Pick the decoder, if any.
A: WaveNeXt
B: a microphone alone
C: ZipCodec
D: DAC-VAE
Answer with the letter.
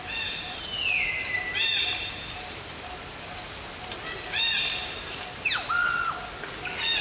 B